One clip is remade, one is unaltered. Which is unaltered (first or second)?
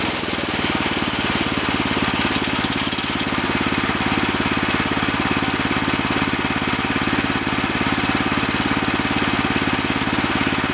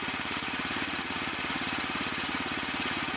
first